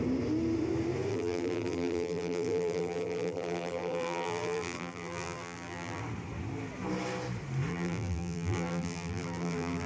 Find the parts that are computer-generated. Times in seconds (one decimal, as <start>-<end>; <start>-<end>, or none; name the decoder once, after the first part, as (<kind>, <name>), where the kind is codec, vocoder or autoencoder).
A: 1.1-6.0 (vocoder, BigVGAN v2); 7.7-9.9